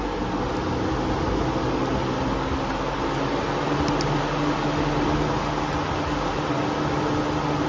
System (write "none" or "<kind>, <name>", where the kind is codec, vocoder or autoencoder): none